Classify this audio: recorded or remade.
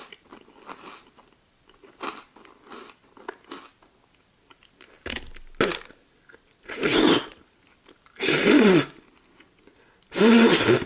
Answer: recorded